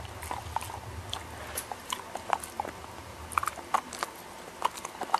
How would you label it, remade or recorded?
recorded